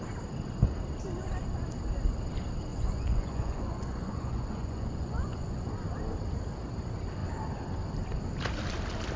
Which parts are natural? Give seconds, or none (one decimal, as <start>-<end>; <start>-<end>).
0.0-2.7; 5.6-9.2